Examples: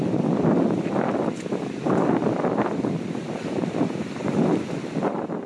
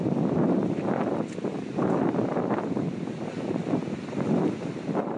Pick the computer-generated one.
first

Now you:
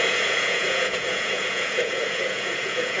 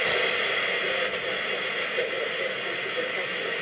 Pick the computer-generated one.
first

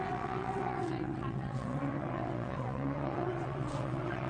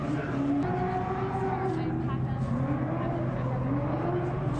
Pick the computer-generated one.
first